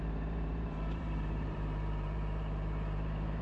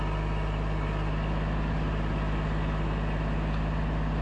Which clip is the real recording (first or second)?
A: second